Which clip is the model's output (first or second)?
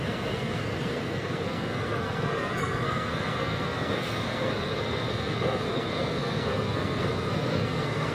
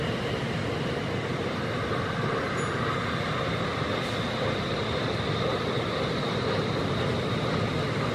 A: first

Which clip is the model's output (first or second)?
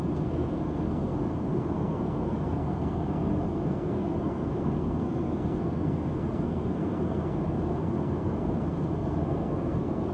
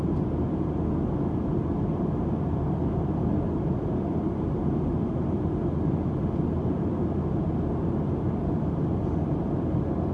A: first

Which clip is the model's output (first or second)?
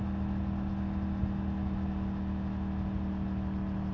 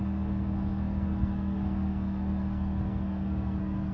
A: second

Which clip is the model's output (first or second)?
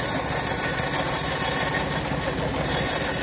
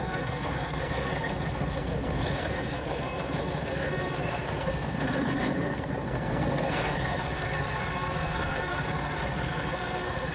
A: second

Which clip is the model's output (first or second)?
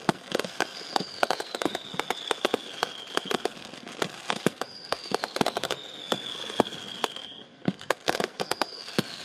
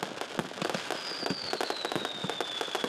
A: first